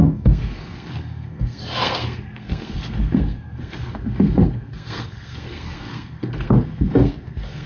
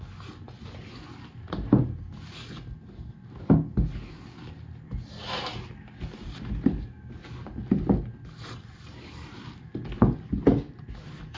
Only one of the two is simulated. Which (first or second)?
first